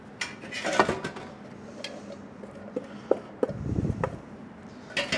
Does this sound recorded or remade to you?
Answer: recorded